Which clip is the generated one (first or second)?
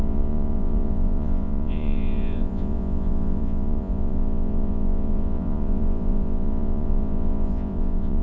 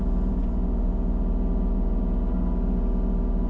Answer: first